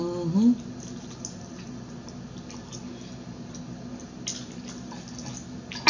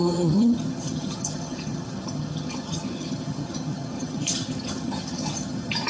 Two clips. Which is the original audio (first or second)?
first